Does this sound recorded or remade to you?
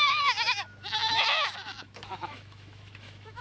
remade